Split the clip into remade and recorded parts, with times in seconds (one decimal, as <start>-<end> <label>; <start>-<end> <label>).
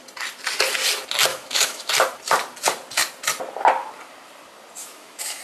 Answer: 0.0-1.3 recorded; 1.3-1.9 remade; 1.9-4.8 recorded; 4.8-5.4 remade